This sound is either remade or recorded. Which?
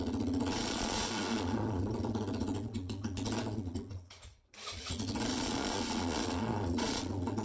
remade